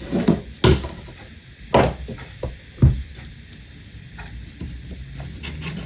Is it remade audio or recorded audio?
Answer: recorded